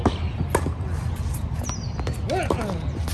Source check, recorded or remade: recorded